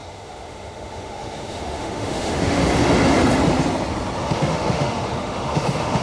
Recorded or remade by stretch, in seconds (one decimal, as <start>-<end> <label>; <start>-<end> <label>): 0.0-2.6 remade; 2.6-4.3 recorded; 4.3-6.0 remade

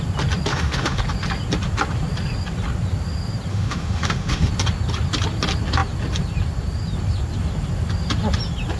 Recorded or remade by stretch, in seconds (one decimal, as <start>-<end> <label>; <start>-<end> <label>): 0.0-0.5 recorded; 0.5-1.0 remade; 1.0-3.5 recorded; 3.5-4.5 remade; 4.5-8.8 recorded

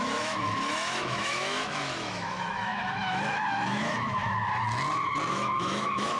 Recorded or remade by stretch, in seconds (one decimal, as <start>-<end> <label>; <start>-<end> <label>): 0.0-4.4 remade; 4.4-5.3 recorded; 5.3-6.2 remade

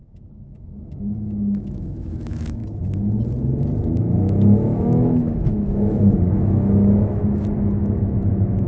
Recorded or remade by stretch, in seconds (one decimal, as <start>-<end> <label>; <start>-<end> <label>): 0.0-2.6 remade; 2.6-4.2 recorded; 4.2-8.7 remade